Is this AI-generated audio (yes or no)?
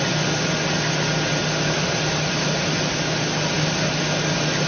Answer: no